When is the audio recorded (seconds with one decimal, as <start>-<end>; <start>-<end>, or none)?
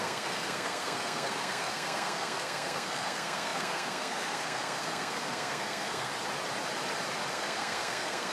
6.1-7.3